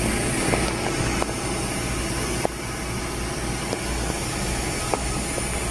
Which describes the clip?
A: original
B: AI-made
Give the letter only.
A